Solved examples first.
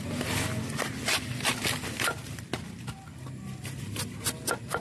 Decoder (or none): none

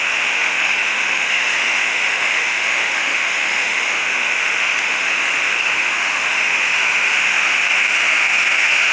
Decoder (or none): autoencoder, DAC-VAE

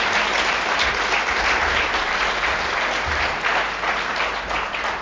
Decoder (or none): none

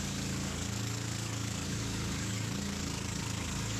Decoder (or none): codec, DAC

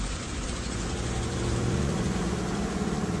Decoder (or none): vocoder, Vocos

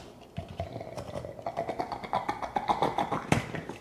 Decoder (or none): none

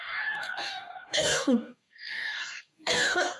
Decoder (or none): codec, DAC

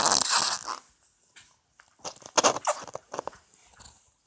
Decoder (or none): none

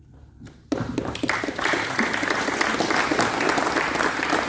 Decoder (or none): none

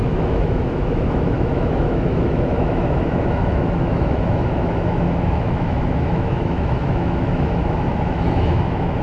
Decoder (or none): autoencoder, DAC-VAE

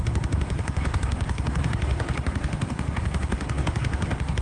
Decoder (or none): codec, SNAC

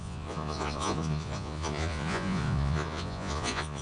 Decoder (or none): vocoder, Vocos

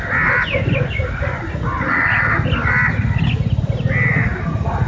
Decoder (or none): none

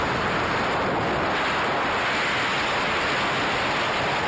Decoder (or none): none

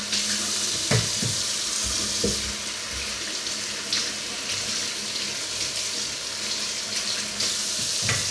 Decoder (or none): none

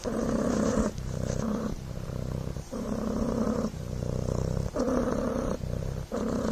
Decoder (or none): vocoder, BigVGAN v2